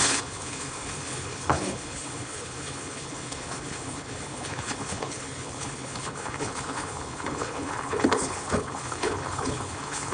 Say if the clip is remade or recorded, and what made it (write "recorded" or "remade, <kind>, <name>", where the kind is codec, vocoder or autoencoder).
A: remade, codec, HILCodec